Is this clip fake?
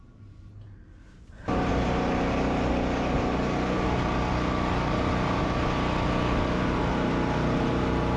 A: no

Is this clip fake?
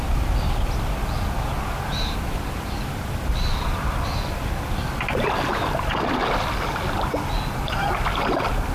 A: no